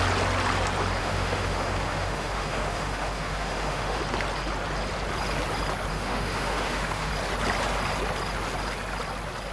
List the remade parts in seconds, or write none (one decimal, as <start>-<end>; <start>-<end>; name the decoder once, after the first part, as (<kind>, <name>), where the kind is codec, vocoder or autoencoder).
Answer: 1.0-4.0 (autoencoder, DAC-VAE); 5.9-7.1